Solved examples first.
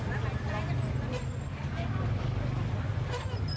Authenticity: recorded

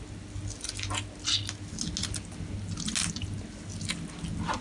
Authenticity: recorded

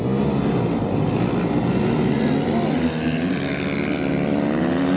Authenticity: recorded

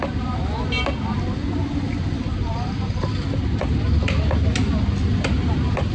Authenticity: recorded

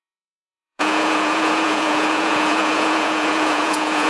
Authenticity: remade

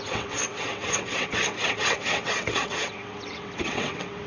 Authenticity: remade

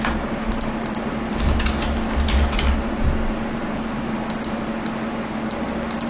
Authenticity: recorded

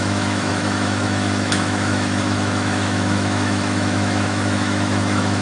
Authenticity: remade